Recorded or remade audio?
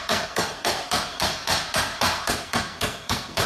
remade